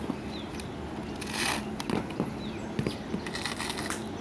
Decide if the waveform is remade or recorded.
recorded